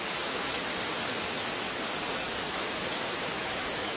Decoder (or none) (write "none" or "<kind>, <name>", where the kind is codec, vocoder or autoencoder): codec, DAC